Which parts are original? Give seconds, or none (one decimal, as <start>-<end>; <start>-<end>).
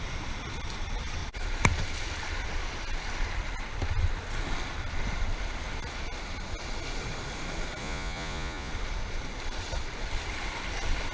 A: 0.0-7.8; 8.7-11.1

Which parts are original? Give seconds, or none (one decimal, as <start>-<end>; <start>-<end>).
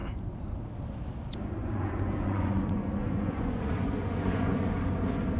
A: 0.0-1.6; 4.8-5.4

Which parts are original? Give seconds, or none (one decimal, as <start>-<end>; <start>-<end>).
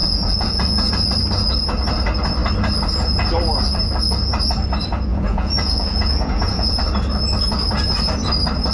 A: 0.9-5.1; 6.8-8.7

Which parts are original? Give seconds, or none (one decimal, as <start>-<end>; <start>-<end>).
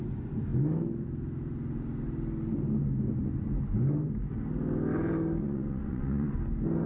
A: 0.0-5.4; 6.4-6.9